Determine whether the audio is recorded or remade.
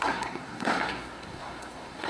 remade